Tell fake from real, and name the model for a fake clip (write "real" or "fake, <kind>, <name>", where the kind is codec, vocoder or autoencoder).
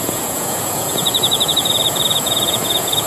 fake, vocoder, Vocos